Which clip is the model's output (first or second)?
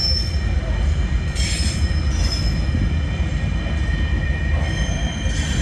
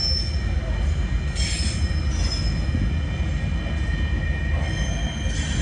first